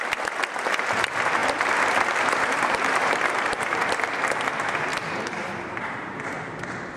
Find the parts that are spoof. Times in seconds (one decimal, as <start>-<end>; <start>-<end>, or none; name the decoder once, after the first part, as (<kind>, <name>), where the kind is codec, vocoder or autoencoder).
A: 1.4-3.9 (vocoder, BigVGAN v2); 4.9-6.2